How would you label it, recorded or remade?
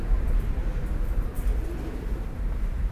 remade